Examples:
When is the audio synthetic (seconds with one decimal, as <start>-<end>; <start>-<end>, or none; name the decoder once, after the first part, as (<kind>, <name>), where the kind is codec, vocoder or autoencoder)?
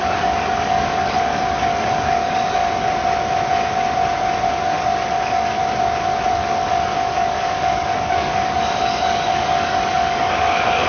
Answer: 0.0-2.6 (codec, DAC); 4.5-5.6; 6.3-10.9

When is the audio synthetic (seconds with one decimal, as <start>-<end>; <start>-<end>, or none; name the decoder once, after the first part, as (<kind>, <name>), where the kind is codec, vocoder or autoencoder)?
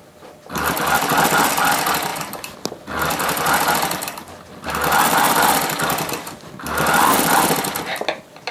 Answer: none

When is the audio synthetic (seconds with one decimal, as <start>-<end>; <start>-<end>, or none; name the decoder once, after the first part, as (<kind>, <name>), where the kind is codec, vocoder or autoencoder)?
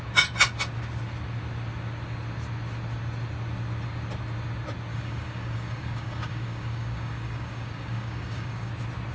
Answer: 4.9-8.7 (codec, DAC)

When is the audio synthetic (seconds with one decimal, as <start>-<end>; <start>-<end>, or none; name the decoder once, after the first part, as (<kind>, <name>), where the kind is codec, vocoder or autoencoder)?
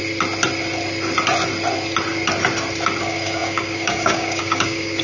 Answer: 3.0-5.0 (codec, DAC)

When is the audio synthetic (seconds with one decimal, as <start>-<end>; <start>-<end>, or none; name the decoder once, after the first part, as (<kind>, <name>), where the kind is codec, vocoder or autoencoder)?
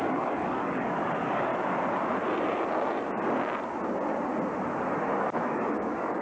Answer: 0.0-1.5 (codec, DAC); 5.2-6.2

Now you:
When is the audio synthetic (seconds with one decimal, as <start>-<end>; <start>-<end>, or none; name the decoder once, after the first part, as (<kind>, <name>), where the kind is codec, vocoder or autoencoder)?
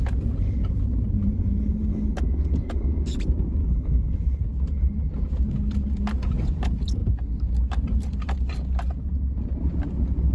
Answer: 1.9-3.2 (codec, DAC); 3.6-4.2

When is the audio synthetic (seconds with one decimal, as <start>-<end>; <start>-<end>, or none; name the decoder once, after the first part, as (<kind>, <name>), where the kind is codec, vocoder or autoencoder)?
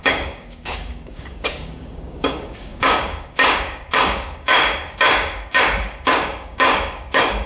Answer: 0.0-7.5 (codec, DAC)